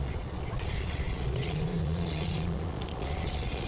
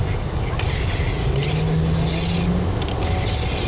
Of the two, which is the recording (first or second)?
second